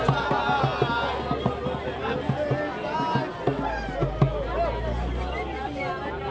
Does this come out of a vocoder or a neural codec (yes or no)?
no